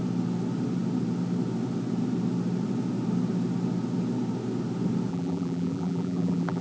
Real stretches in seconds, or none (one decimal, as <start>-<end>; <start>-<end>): 0.0-5.1